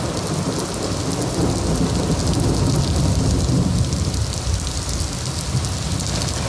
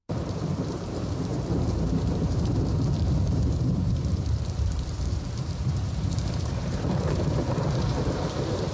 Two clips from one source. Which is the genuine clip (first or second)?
first